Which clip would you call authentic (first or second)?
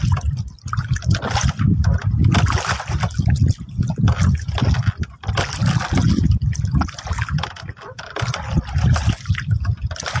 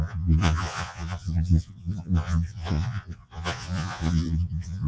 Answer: first